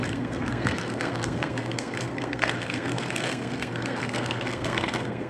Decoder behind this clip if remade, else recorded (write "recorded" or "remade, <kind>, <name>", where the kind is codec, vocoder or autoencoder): remade, codec, SNAC